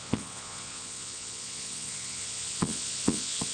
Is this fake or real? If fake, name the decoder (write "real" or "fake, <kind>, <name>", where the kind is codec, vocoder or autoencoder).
fake, vocoder, Vocos